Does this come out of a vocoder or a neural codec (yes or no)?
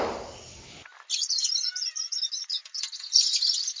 no